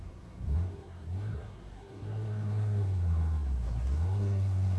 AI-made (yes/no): yes